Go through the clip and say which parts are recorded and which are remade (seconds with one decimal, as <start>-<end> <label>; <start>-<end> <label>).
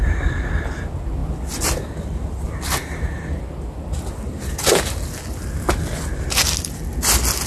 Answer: 0.0-7.5 recorded